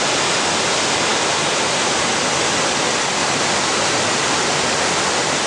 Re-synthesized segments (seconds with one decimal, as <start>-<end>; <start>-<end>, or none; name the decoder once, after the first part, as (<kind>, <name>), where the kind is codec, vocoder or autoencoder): none